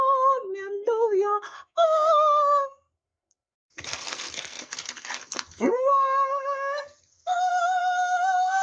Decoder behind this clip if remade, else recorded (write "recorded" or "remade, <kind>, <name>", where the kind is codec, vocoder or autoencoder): remade, codec, SNAC